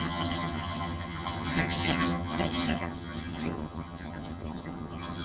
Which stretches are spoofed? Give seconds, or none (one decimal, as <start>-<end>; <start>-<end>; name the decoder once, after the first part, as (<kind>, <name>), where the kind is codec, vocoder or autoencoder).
0.0-5.2 (vocoder, HiFi-GAN)